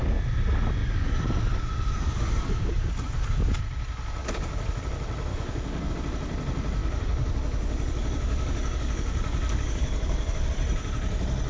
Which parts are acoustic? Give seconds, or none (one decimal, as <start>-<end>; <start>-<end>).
0.0-0.8; 3.6-4.2; 4.8-5.3; 5.9-6.8; 10.5-11.5